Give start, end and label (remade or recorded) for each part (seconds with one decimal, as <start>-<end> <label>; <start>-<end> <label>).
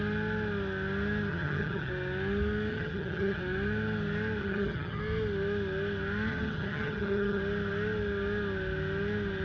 0.0-1.3 recorded; 1.3-1.9 remade; 1.9-2.7 recorded; 2.7-3.4 remade; 3.4-4.4 recorded; 4.4-5.0 remade; 5.0-6.3 recorded; 6.3-7.4 remade; 7.4-9.4 recorded